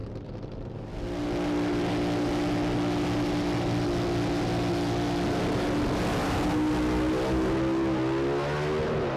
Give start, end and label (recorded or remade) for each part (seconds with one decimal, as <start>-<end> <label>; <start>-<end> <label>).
0.0-9.2 recorded